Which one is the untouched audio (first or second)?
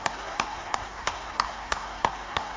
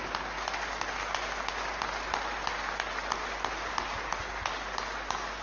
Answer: second